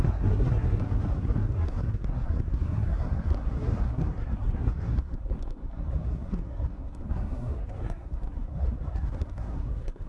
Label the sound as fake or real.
fake